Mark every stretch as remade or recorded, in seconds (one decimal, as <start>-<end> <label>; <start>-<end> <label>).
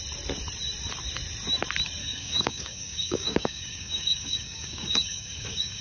0.0-2.0 recorded; 2.0-5.8 remade